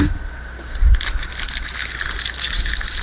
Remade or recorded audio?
recorded